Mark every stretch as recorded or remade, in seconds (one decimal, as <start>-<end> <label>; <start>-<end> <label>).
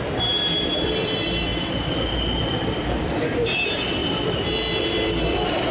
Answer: 0.0-4.0 remade; 4.0-4.8 recorded; 4.8-5.7 remade